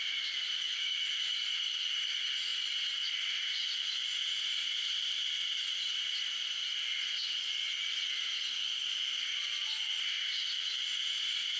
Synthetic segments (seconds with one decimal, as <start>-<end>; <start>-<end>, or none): 0.6-1.2